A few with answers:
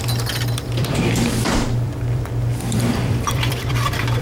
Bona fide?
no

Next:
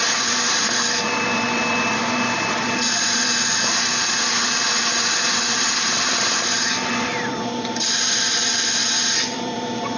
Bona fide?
no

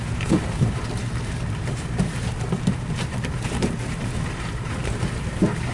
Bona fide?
no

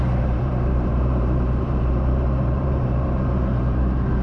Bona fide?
no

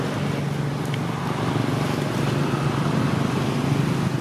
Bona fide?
yes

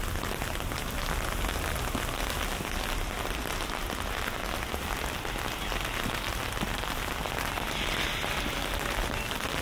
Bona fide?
yes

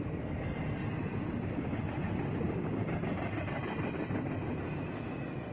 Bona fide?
no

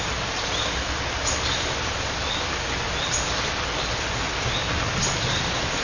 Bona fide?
yes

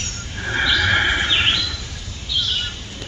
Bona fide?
no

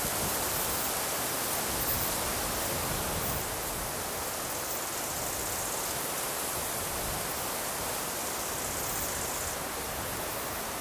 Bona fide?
yes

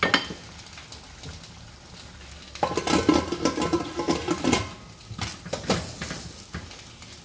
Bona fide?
yes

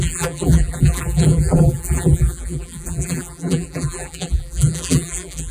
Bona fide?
no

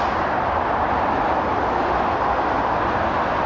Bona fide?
no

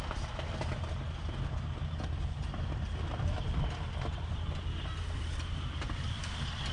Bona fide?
yes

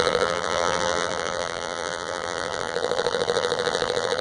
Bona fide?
no